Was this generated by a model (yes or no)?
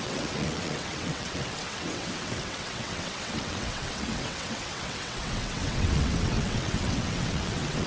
yes